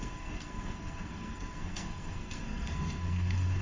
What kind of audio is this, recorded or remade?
remade